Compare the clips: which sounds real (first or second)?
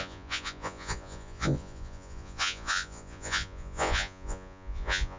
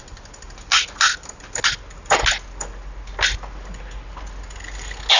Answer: second